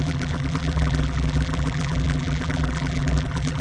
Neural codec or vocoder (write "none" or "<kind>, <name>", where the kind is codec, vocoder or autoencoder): vocoder, BigVGAN v2